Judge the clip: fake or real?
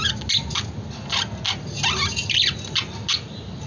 real